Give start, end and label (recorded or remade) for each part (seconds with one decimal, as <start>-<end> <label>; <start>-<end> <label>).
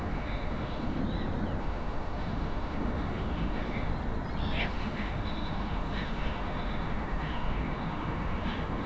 0.0-1.0 remade; 1.0-1.6 recorded; 1.6-3.9 remade; 3.9-4.6 recorded; 4.6-8.9 remade